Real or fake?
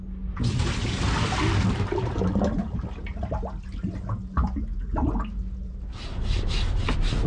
real